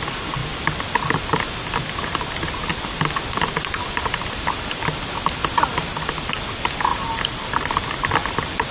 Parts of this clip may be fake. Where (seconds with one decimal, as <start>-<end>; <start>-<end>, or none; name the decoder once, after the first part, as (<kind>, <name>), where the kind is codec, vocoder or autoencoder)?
2.7-5.0 (vocoder, BigVGAN v2); 6.9-8.7